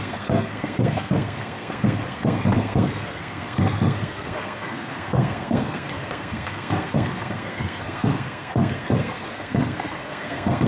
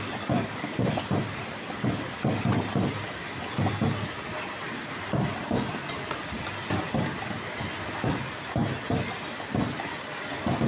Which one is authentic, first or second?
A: second